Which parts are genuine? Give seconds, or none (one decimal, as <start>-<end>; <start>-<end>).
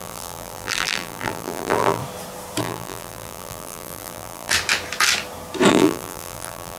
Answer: 2.0-2.6; 4.5-5.7